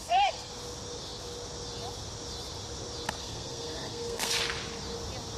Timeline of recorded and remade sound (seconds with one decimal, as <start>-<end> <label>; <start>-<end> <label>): 0.0-0.5 remade; 0.5-3.2 recorded; 3.2-4.4 remade; 4.4-5.4 recorded